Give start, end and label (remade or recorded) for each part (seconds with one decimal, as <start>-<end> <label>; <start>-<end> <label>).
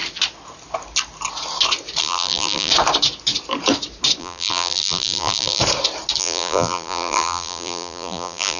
0.0-2.0 recorded; 2.0-2.7 remade; 2.7-4.2 recorded; 4.2-5.6 remade; 5.6-6.2 recorded; 6.2-8.6 remade